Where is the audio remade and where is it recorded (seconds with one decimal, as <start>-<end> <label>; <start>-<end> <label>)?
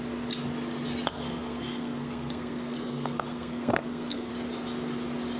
0.0-1.1 recorded; 1.1-4.3 remade; 4.3-5.4 recorded